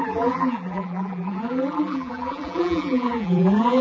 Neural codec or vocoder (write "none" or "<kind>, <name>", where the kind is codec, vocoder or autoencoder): vocoder, BigVGAN v2